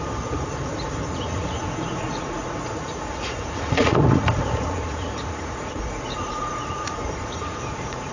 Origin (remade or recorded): remade